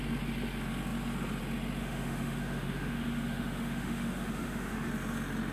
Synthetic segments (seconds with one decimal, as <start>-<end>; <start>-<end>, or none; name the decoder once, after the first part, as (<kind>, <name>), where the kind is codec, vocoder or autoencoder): 1.8-4.9 (autoencoder, DAC-VAE)